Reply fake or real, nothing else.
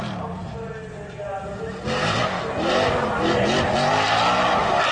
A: real